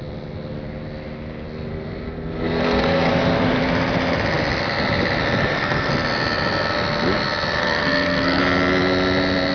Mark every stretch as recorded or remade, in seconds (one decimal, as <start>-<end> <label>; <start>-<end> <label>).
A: 0.0-1.7 recorded; 1.7-3.1 remade; 3.1-5.4 recorded; 5.4-5.9 remade; 5.9-7.6 recorded; 7.6-8.4 remade; 8.4-9.5 recorded